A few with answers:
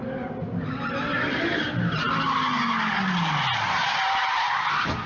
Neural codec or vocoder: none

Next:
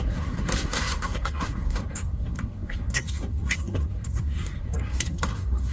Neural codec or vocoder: codec, SNAC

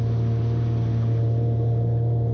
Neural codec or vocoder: none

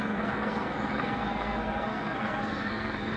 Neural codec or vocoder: codec, SNAC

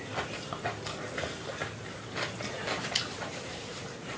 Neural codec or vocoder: none